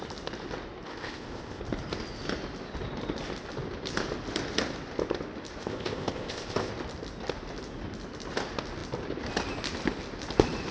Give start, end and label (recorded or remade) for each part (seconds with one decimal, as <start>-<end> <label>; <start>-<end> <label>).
0.0-0.9 recorded; 0.9-1.6 remade; 1.6-5.6 recorded; 5.6-6.7 remade; 6.7-10.7 recorded